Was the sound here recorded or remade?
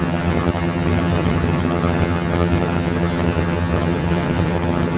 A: remade